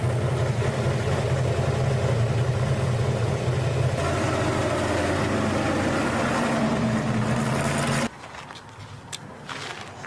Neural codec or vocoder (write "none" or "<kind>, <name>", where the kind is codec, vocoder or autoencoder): none